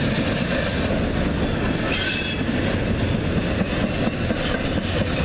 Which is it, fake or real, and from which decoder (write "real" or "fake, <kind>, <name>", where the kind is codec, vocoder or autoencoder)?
real